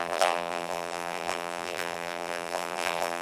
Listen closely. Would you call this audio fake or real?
fake